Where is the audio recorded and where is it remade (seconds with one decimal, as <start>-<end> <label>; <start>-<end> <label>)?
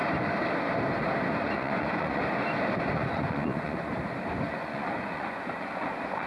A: 0.0-1.4 recorded; 1.4-2.2 remade; 2.2-2.9 recorded; 2.9-3.9 remade; 3.9-4.5 recorded; 4.5-6.3 remade